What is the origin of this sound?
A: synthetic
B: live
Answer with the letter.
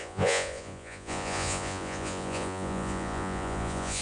A